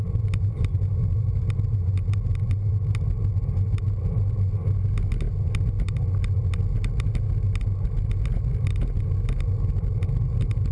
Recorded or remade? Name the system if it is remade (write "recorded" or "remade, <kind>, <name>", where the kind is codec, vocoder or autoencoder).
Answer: recorded